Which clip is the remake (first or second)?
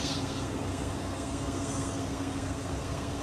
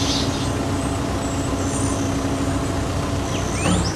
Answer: first